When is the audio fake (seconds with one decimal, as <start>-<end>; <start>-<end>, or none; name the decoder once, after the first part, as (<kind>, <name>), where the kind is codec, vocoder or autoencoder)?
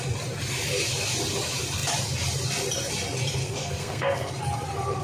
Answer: 3.4-4.3 (codec, SNAC)